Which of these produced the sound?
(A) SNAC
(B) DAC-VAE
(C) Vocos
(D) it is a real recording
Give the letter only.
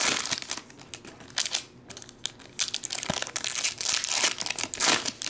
D